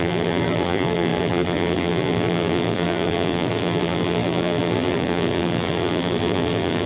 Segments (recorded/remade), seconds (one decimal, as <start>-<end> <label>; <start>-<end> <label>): 0.0-6.9 remade